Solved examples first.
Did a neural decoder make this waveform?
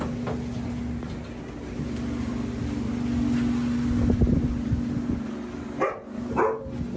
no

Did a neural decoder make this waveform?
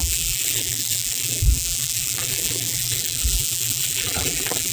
yes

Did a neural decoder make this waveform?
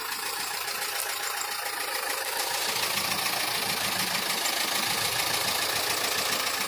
no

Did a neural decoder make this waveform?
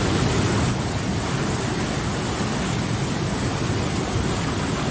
no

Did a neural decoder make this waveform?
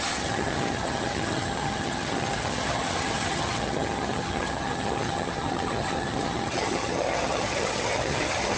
yes